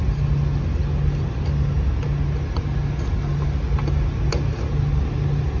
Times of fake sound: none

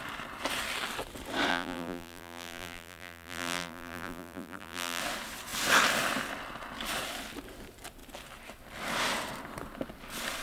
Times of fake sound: 1.5-5.0 (vocoder, BigVGAN v2)